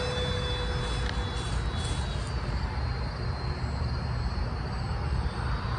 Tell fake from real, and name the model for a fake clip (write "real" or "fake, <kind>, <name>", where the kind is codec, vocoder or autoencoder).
real